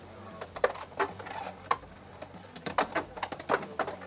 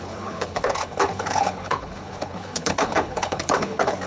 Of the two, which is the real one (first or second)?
first